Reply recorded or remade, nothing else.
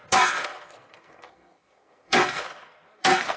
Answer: remade